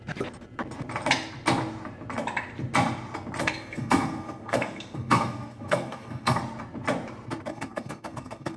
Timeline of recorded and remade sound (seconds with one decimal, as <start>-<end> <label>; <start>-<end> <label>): 0.0-3.4 recorded; 3.4-6.4 remade; 6.4-7.5 recorded; 7.5-8.6 remade